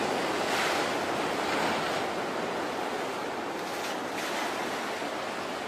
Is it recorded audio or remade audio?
recorded